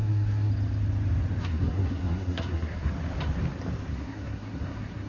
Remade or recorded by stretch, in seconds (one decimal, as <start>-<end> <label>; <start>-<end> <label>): 0.0-0.5 remade; 0.5-1.4 recorded; 1.4-2.9 remade; 2.9-3.9 recorded; 3.9-5.1 remade